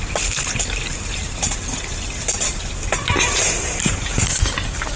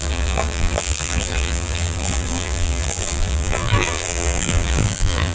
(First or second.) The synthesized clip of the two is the second